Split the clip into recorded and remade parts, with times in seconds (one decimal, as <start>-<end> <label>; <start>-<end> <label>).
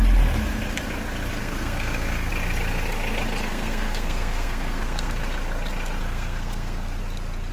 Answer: 0.0-1.4 recorded; 1.4-2.3 remade; 2.3-3.5 recorded; 3.5-5.1 remade; 5.1-6.0 recorded; 6.0-7.0 remade; 7.0-7.5 recorded